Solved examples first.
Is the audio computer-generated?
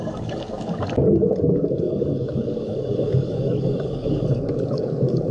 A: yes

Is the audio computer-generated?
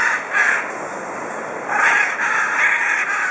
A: yes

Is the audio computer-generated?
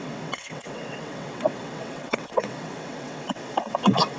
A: yes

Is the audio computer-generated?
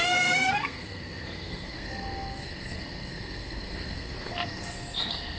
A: yes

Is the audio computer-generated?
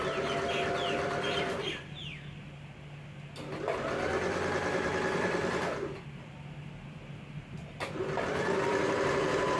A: no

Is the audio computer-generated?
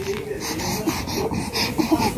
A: no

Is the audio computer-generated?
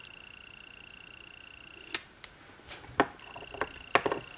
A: no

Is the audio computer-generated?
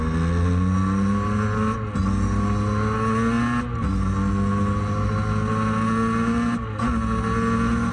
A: no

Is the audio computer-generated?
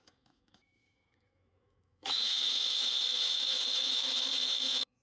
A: yes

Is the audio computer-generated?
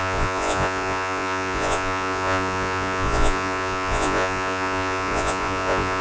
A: yes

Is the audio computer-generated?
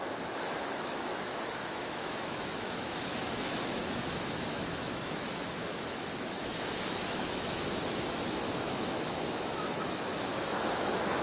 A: yes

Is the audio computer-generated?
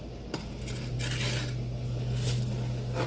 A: no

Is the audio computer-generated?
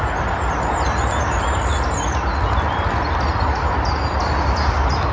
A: no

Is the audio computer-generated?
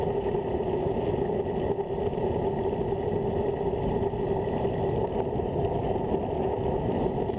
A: no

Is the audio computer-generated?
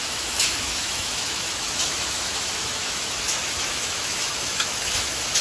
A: yes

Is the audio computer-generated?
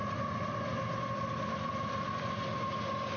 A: no